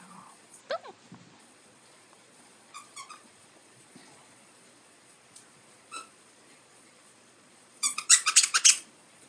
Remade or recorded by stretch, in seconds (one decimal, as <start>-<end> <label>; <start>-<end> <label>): 0.0-0.6 remade; 0.6-1.4 recorded; 1.4-9.3 remade